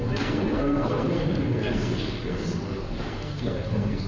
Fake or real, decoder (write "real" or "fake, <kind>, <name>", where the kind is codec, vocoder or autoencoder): fake, codec, SNAC